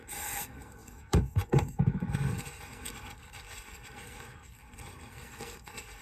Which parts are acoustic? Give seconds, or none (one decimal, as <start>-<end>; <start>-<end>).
none